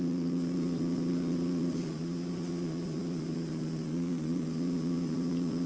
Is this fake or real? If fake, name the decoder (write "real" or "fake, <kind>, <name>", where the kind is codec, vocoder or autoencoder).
fake, vocoder, Vocos